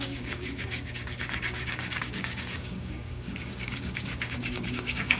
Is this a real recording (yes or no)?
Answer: no